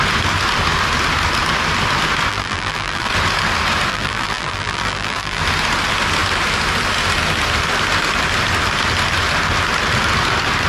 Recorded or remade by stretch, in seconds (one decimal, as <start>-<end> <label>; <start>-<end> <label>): 0.0-2.3 recorded; 2.3-3.1 remade; 3.1-3.9 recorded; 3.9-5.4 remade; 5.4-10.7 recorded